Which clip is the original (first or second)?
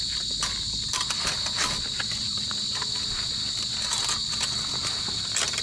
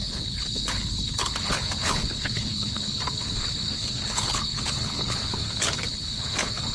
first